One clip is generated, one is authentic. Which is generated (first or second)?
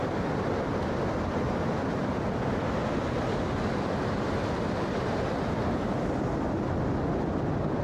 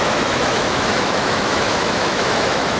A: second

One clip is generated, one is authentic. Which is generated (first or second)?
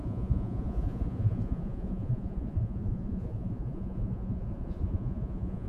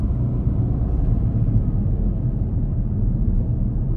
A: first